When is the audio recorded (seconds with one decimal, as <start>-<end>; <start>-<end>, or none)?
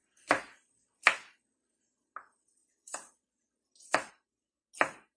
1.8-2.6; 4.1-5.2